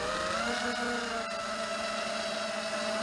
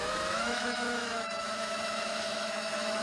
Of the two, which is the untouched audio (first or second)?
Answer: first